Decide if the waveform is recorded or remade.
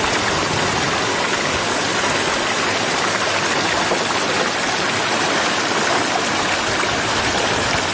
recorded